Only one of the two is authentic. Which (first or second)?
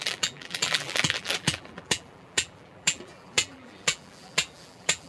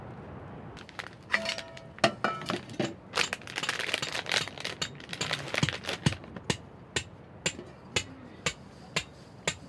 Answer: second